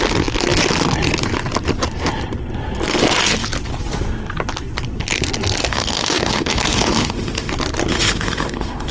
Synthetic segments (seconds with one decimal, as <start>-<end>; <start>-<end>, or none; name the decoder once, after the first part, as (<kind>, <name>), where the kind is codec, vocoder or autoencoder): 5.7-7.5 (autoencoder, DAC-VAE); 7.9-8.9